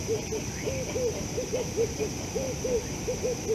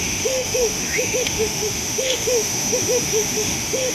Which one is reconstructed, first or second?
second